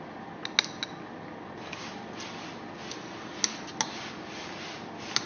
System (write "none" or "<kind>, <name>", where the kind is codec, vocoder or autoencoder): none